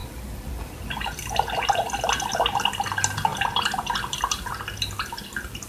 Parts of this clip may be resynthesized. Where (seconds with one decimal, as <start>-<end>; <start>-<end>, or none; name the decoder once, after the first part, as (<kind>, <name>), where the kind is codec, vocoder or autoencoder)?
0.0-2.3 (vocoder, BigVGAN v2); 3.3-4.5